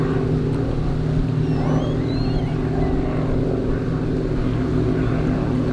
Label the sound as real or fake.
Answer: real